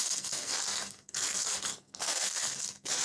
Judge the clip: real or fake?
fake